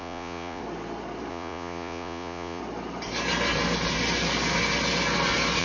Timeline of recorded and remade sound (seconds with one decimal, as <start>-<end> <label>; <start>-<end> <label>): 0.0-0.6 remade; 0.6-1.3 recorded; 1.3-2.6 remade; 2.6-5.6 recorded